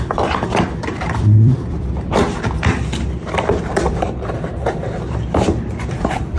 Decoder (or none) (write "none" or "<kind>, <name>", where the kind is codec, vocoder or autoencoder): vocoder, BigVGAN v2